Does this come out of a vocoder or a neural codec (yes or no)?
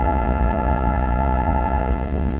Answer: yes